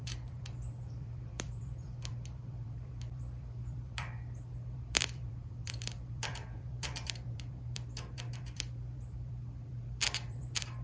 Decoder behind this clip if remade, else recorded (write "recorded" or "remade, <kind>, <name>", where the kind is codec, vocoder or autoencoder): remade, vocoder, BigVGAN v2